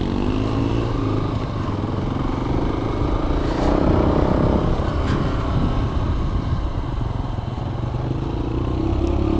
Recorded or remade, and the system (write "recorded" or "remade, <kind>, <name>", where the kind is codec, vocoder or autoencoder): recorded